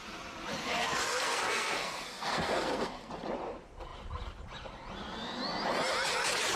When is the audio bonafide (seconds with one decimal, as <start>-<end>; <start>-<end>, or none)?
0.0-0.6; 3.1-6.6